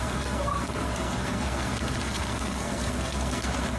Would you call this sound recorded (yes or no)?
no